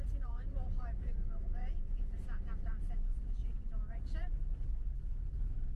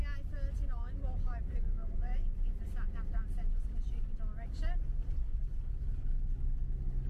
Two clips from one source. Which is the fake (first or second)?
first